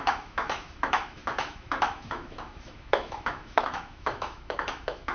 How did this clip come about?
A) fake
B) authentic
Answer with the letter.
A